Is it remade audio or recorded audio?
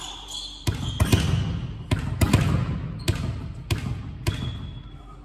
recorded